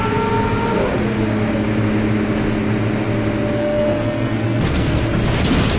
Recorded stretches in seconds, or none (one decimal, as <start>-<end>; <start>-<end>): 0.0-3.6; 5.0-5.8